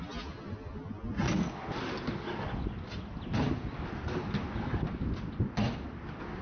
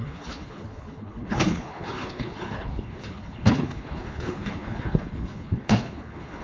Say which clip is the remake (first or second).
second